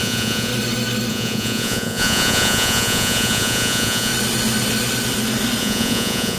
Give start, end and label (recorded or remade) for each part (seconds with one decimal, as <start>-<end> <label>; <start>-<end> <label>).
0.0-0.5 remade; 0.5-1.1 recorded; 1.1-4.1 remade; 4.1-5.6 recorded; 5.6-6.4 remade